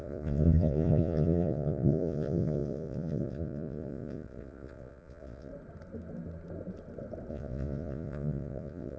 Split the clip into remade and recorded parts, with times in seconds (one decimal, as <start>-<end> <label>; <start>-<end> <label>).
0.0-5.5 remade; 5.5-7.3 recorded; 7.3-9.0 remade